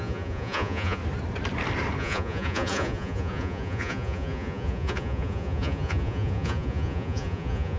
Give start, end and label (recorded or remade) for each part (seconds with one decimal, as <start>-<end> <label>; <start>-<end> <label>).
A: 0.0-1.0 remade; 1.0-2.0 recorded; 2.0-7.8 remade